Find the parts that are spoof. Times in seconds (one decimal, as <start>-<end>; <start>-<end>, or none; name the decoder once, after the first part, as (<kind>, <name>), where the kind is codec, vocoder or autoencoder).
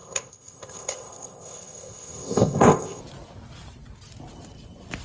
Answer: 0.0-3.0 (codec, ZipCodec)